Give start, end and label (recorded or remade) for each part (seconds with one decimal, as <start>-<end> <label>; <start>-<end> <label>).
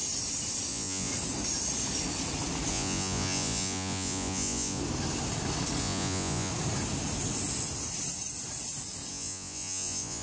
0.0-0.7 recorded; 0.7-1.1 remade; 1.1-2.7 recorded; 2.7-4.8 remade; 4.8-5.8 recorded; 5.8-6.5 remade; 6.5-9.1 recorded; 9.1-10.2 remade